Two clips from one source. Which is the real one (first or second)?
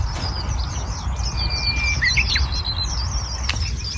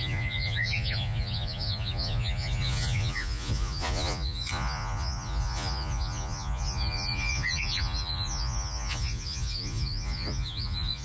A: first